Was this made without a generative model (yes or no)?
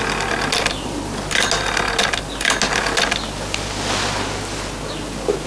yes